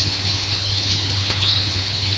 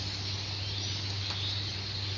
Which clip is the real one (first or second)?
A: second